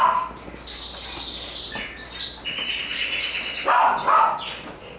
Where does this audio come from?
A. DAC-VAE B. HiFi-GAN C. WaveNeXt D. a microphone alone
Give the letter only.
D